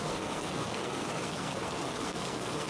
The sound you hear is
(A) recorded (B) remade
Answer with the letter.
B